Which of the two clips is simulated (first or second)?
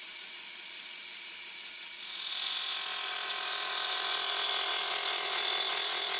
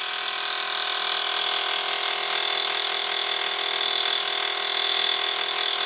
first